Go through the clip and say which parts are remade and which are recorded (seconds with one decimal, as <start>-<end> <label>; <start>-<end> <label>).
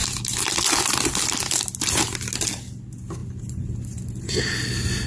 0.0-3.2 recorded; 3.2-4.5 remade; 4.5-5.1 recorded